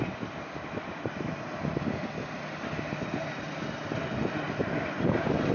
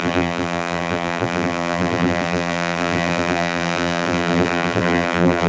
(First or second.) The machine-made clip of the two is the second